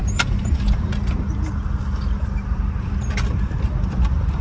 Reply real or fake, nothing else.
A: fake